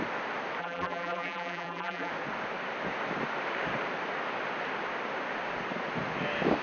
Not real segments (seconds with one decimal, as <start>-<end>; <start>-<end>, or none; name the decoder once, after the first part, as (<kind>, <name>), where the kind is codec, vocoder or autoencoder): 0.6-2.1 (vocoder, BigVGAN v2)